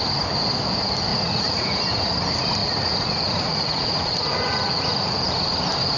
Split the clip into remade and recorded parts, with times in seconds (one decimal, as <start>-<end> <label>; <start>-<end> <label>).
0.0-1.1 recorded; 1.1-1.8 remade; 1.8-2.6 recorded; 2.6-5.1 remade; 5.1-6.0 recorded

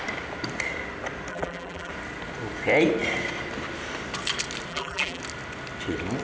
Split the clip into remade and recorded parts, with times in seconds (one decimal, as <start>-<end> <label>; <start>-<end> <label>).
0.0-1.3 recorded; 1.3-1.9 remade; 1.9-4.7 recorded; 4.7-5.2 remade; 5.2-6.2 recorded